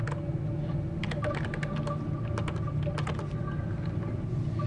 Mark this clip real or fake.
real